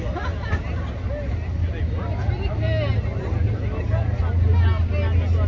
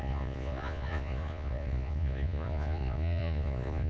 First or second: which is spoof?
second